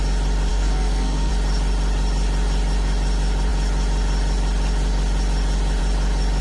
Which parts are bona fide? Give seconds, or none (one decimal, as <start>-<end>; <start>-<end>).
0.0-0.5; 1.3-6.4